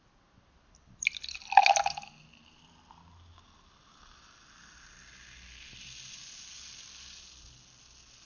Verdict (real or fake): real